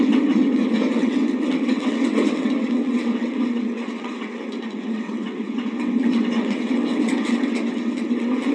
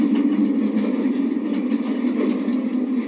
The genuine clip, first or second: second